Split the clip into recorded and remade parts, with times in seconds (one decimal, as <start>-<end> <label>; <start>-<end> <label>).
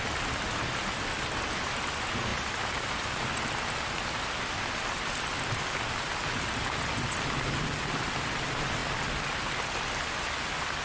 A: 0.0-10.8 recorded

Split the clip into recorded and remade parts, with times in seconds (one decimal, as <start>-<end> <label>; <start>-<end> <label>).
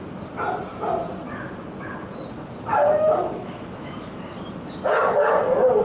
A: 0.0-2.7 recorded; 2.7-4.2 remade; 4.2-5.8 recorded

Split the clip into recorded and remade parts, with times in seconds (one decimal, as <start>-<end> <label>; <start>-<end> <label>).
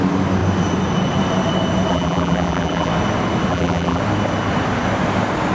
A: 0.0-1.9 recorded; 1.9-2.9 remade; 2.9-3.5 recorded; 3.5-4.0 remade; 4.0-5.5 recorded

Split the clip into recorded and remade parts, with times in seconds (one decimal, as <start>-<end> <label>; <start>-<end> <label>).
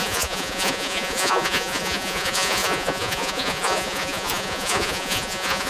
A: 0.0-5.7 remade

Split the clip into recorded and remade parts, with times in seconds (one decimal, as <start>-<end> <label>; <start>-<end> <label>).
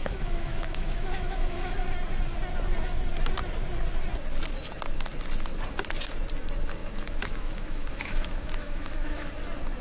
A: 0.0-1.7 remade; 1.7-6.8 recorded; 6.8-9.3 remade; 9.3-9.8 recorded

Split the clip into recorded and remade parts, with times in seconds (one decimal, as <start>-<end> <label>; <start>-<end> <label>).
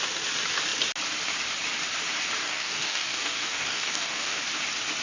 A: 0.0-2.4 recorded; 2.4-4.4 remade; 4.4-5.0 recorded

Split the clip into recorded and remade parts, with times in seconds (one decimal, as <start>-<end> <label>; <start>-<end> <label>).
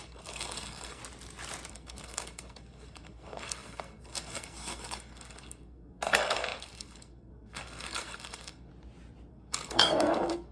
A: 0.0-1.0 remade; 1.0-1.7 recorded; 1.7-8.7 remade; 8.7-9.3 recorded; 9.3-10.5 remade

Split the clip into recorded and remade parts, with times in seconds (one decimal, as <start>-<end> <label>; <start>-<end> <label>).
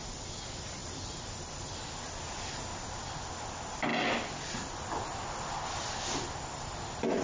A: 0.0-7.2 recorded